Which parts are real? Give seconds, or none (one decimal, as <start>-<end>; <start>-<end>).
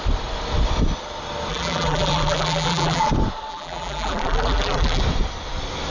0.0-1.5; 3.1-3.5; 5.0-5.9